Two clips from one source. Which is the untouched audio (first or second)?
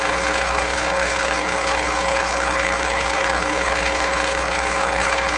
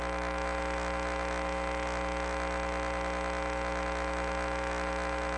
second